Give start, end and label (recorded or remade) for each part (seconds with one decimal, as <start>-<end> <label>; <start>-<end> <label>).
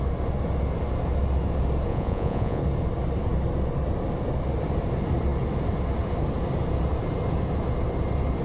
0.0-1.9 recorded; 1.9-2.6 remade; 2.6-8.4 recorded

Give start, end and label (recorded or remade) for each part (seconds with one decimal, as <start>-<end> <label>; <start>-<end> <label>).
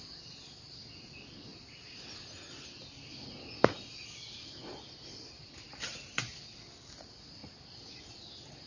0.0-8.7 recorded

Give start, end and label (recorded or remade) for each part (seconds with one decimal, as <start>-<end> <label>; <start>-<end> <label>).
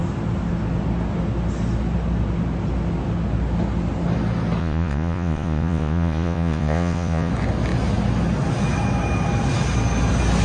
0.0-4.6 recorded; 4.6-7.3 remade; 7.3-10.4 recorded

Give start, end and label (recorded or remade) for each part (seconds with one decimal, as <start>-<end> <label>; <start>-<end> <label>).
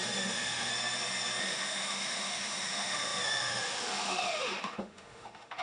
0.0-0.7 remade; 0.7-1.4 recorded; 1.4-5.6 remade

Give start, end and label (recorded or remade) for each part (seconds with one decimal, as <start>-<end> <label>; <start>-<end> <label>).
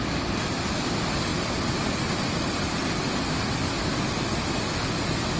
0.0-5.4 recorded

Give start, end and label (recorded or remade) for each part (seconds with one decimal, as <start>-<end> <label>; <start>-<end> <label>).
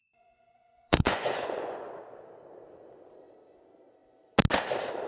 0.0-2.0 remade; 2.0-5.1 recorded